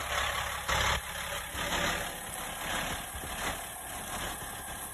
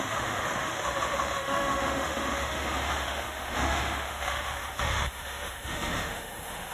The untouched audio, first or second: first